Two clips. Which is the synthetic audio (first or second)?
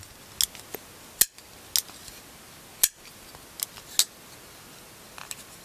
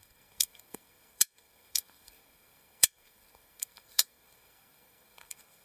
second